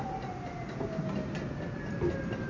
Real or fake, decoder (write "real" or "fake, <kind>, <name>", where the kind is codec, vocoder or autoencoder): real